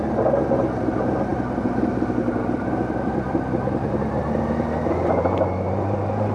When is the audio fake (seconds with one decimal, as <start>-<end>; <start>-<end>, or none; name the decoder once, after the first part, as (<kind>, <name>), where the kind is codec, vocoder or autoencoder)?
none